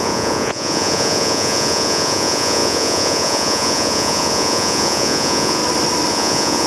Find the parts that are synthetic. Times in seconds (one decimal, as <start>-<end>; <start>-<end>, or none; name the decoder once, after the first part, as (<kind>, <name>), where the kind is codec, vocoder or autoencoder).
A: 0.0-5.6 (vocoder, Vocos); 6.1-6.7